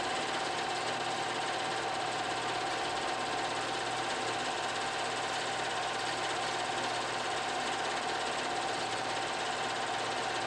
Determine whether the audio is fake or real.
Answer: real